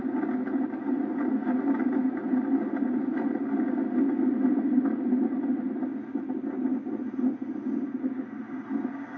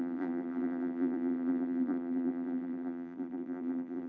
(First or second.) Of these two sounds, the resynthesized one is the second